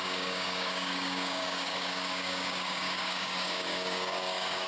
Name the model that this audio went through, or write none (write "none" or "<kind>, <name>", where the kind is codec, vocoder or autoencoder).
codec, DAC